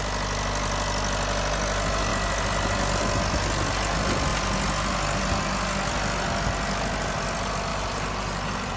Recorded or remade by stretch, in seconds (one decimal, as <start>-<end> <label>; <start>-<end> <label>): 0.0-7.7 recorded; 7.7-8.8 remade